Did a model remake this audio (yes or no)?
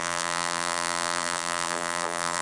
yes